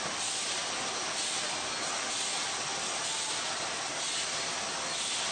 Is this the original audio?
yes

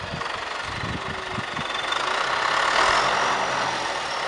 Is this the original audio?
yes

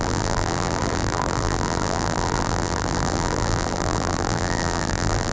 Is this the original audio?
no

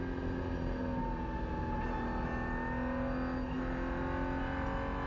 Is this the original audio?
yes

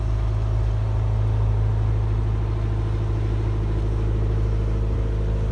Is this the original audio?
yes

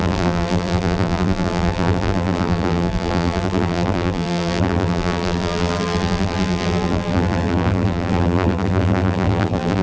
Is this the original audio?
no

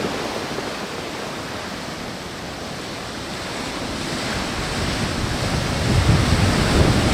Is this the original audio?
yes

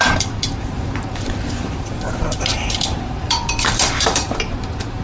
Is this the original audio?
no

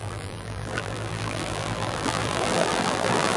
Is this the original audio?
no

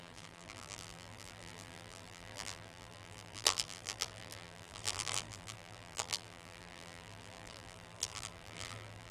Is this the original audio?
no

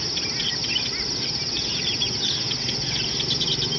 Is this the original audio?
yes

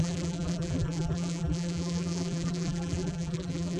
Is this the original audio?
no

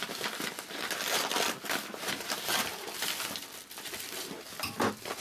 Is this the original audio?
no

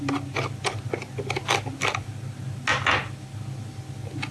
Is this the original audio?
yes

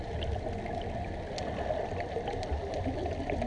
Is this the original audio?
yes